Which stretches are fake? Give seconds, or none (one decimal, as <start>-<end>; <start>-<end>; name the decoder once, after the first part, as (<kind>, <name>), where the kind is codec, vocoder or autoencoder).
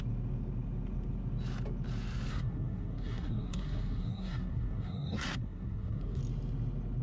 2.3-6.2 (codec, SNAC)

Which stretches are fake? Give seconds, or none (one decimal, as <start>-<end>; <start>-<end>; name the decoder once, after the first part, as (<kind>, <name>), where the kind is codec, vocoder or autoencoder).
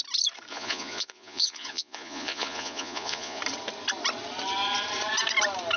0.5-3.4 (vocoder, Vocos)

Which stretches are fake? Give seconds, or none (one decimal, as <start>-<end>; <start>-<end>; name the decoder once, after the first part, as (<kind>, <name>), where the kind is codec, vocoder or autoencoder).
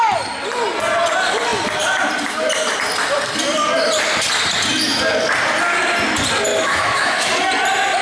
6.5-7.3 (autoencoder, DAC-VAE)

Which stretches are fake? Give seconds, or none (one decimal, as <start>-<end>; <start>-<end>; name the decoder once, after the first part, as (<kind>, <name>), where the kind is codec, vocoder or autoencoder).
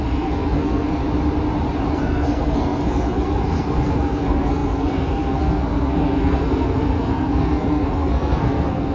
0.0-1.0 (codec, SNAC); 1.9-8.9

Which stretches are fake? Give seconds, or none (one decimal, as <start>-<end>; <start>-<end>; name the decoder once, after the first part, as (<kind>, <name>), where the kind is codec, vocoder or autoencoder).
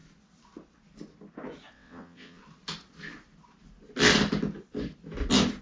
1.7-2.4 (vocoder, WaveNeXt)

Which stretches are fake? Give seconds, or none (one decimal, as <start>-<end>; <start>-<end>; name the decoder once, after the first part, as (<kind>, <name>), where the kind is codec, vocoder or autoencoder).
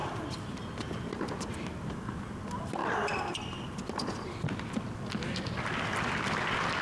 none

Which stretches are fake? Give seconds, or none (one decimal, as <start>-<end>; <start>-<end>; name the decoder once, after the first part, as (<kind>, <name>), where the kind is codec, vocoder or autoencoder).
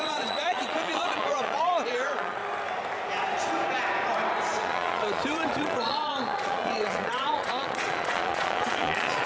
0.0-2.4 (vocoder, Vocos); 4.6-9.3